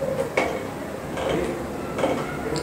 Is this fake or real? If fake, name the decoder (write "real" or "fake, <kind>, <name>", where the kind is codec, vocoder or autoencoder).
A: real